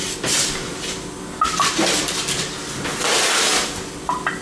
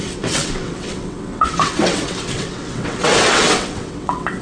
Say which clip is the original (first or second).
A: first